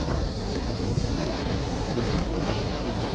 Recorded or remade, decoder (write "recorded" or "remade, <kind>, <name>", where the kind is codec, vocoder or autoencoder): remade, codec, SNAC